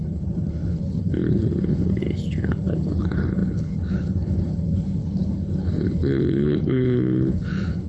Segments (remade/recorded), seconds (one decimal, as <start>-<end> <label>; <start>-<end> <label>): 0.0-7.9 remade